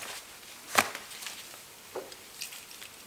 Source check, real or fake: real